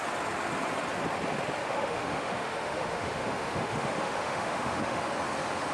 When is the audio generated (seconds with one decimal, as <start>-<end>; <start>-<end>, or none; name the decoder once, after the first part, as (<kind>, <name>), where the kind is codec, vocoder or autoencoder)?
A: 1.6-5.0 (autoencoder, DAC-VAE)